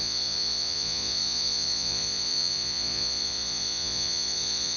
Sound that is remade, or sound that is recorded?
remade